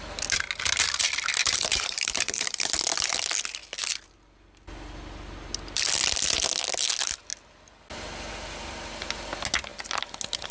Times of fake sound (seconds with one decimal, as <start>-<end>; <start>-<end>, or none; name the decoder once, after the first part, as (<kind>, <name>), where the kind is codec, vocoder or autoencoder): 1.4-2.7 (vocoder, BigVGAN v2)